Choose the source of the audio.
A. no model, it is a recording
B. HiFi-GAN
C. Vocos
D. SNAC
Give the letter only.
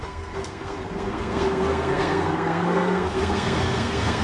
D